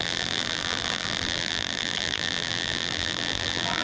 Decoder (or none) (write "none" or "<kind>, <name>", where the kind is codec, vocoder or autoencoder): vocoder, BigVGAN v2